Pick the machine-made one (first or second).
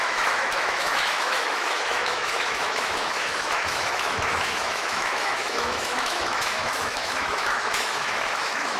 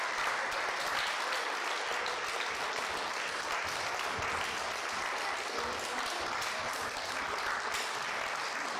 first